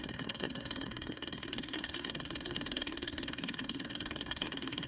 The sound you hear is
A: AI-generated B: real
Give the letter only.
A